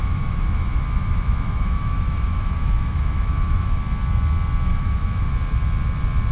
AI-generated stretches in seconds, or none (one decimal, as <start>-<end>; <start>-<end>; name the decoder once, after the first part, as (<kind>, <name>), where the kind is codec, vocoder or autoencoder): 0.0-3.8 (autoencoder, DAC-VAE); 4.7-5.3